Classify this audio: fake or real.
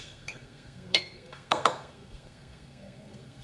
fake